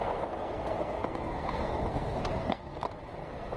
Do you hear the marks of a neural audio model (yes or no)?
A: yes